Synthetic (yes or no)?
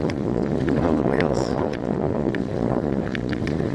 yes